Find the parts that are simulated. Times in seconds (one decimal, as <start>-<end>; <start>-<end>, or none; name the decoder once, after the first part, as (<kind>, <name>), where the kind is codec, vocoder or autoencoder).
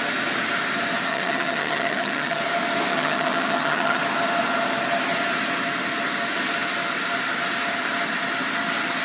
1.1-2.4 (vocoder, HiFi-GAN); 2.9-4.0